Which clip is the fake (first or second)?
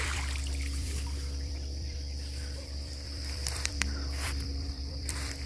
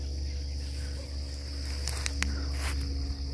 first